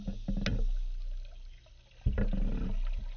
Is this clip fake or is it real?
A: real